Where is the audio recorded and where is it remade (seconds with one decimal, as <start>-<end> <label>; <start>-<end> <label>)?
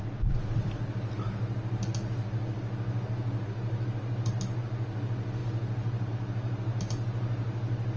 0.0-8.0 recorded